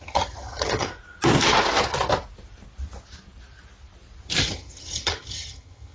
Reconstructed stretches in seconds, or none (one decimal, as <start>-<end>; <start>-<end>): 0.0-0.9; 4.4-5.9